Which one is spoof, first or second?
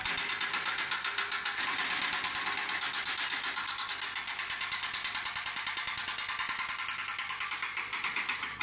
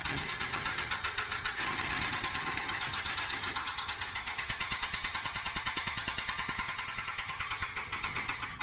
second